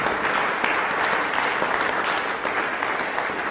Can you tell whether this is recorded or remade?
recorded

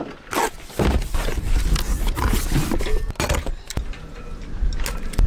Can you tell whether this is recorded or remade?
recorded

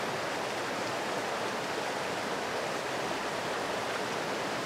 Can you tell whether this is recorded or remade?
recorded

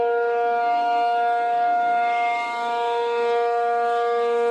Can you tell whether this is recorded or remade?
remade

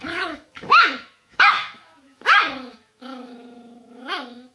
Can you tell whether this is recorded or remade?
remade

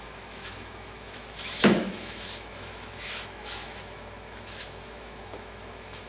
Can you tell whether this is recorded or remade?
remade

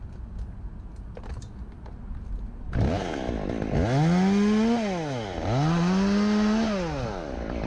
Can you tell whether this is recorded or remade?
recorded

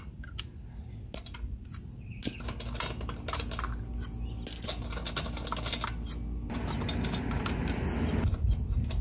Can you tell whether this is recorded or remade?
recorded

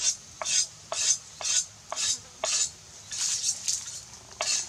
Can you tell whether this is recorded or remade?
recorded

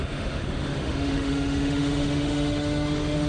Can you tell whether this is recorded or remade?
remade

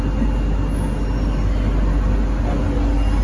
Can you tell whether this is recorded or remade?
recorded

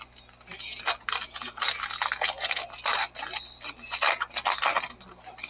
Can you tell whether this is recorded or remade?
recorded